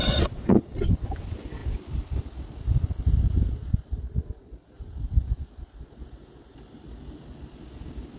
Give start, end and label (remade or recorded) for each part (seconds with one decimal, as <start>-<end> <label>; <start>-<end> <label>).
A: 0.0-0.9 remade; 0.9-8.2 recorded